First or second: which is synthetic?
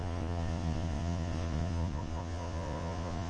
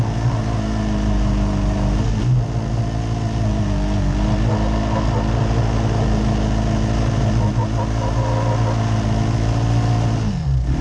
first